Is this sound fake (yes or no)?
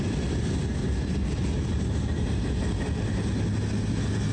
no